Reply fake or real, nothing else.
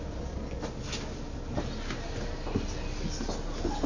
real